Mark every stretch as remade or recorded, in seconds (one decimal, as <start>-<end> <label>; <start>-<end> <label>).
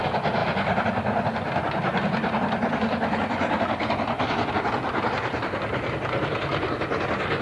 0.0-7.4 recorded